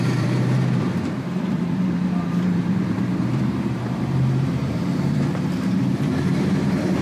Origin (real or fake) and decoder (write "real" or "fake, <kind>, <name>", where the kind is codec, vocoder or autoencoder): fake, vocoder, BigVGAN v2